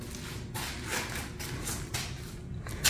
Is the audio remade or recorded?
recorded